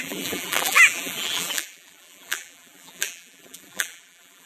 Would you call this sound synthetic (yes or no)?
yes